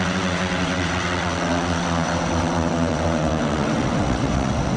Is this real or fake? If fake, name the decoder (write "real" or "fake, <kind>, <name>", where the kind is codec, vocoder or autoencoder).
fake, vocoder, WaveNeXt